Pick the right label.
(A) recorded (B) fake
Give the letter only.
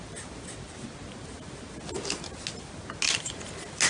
A